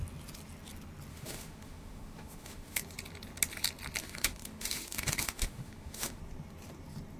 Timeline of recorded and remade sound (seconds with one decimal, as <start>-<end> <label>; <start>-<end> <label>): 0.0-1.1 recorded; 1.1-2.8 remade; 2.8-4.0 recorded; 4.0-6.2 remade; 6.2-7.2 recorded